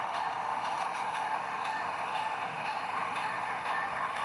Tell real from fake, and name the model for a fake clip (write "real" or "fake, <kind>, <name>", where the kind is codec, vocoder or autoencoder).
fake, autoencoder, DAC-VAE